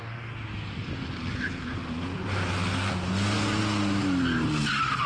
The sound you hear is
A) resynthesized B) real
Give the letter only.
B